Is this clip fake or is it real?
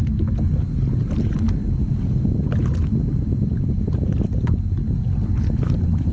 real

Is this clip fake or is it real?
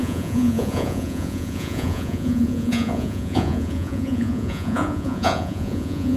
fake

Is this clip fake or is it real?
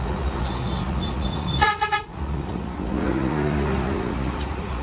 fake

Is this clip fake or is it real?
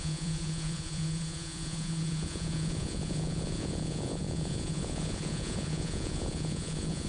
fake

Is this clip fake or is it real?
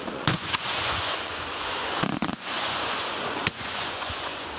fake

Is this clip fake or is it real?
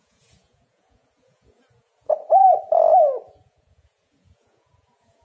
fake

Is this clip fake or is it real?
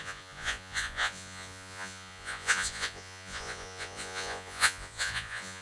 fake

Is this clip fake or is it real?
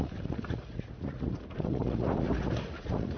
fake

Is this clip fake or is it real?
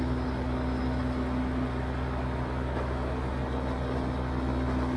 real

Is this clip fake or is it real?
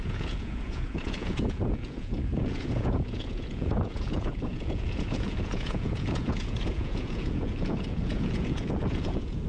fake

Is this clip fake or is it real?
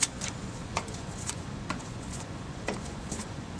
fake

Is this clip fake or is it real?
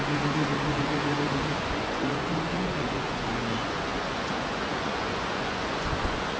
fake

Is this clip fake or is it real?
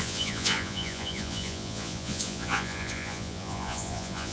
fake